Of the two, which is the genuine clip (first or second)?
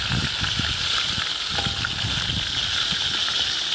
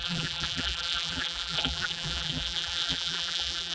first